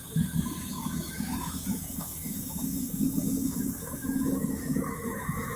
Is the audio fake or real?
fake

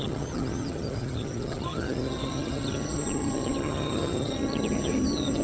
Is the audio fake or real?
fake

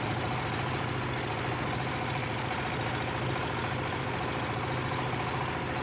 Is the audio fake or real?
real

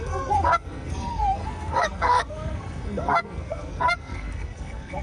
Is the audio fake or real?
fake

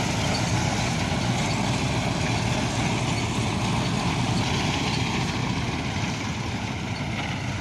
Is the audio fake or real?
real